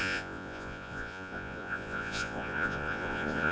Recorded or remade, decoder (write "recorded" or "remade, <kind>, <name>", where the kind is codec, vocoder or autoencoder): remade, vocoder, Vocos